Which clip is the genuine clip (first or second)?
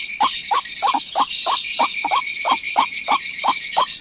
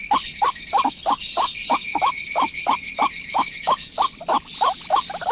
second